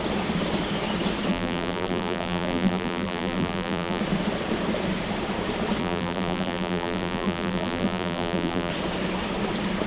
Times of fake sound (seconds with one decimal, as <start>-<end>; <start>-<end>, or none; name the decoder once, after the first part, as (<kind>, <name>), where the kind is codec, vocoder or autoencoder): 1.3-4.0 (vocoder, BigVGAN v2); 5.8-8.7